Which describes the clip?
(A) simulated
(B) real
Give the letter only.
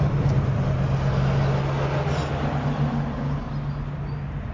B